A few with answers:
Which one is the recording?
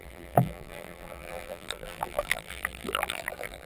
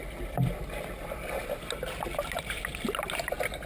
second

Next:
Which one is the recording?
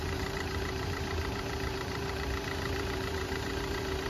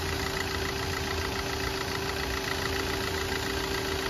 second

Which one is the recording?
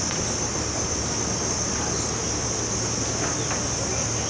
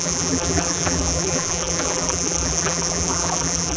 first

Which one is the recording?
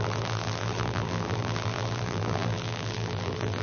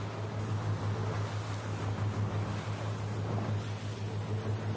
second